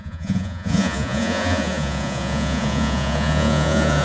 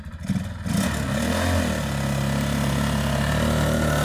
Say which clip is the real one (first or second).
second